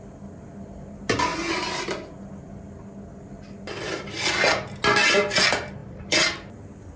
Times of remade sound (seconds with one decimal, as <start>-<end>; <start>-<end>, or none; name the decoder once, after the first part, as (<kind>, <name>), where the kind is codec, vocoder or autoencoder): 5.8-7.0 (vocoder, BigVGAN v2)